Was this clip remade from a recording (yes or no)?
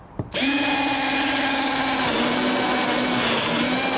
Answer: no